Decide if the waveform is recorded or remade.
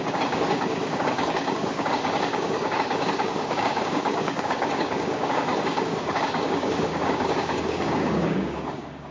remade